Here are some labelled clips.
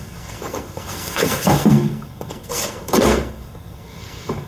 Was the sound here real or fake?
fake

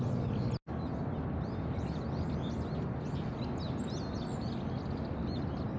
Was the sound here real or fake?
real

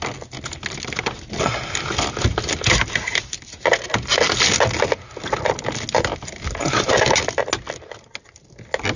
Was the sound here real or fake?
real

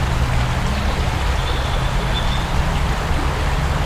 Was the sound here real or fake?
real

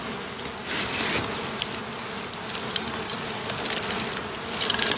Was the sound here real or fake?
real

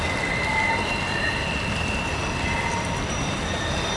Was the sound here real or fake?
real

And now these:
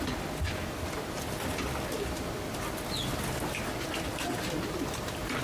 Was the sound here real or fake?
real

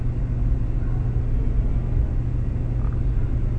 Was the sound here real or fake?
real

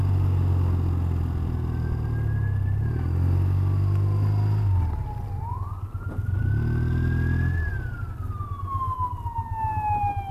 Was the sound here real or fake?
real